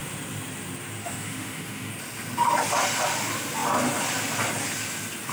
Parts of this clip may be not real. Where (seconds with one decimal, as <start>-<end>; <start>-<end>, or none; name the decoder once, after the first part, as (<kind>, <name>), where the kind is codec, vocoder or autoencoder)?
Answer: 1.0-1.9 (autoencoder, DAC-VAE)